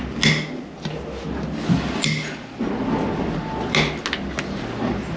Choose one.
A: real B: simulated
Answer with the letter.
A